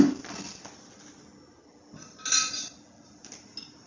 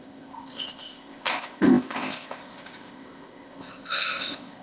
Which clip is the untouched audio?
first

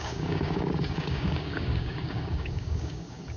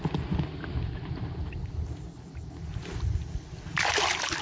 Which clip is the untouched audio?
second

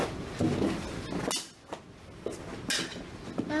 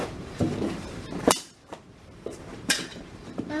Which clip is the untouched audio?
first